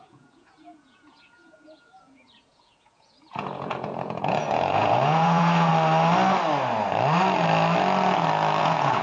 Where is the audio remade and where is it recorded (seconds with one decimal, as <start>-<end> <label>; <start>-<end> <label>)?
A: 0.0-5.7 remade; 5.7-8.6 recorded; 8.6-9.0 remade